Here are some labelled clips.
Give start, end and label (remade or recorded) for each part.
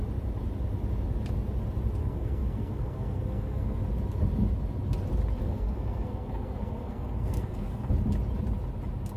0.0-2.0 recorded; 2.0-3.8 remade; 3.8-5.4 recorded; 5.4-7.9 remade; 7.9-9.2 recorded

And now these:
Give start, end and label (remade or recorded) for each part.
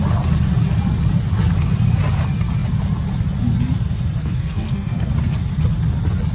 0.0-4.2 recorded; 4.2-5.1 remade; 5.1-6.3 recorded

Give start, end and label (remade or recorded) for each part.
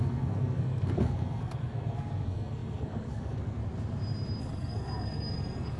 0.0-3.6 remade; 3.6-4.4 recorded; 4.4-5.8 remade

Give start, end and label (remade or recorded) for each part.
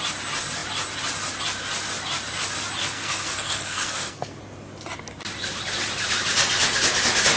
0.0-2.8 recorded; 2.8-4.4 remade; 4.4-7.4 recorded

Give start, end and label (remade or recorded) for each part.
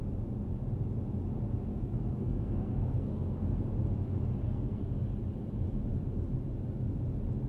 0.0-1.7 recorded; 1.7-3.6 remade; 3.6-4.4 recorded; 4.4-4.9 remade; 4.9-7.5 recorded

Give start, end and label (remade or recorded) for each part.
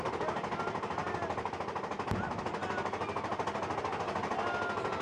0.0-5.0 recorded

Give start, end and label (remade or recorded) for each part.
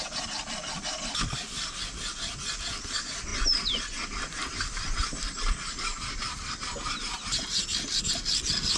0.0-8.8 recorded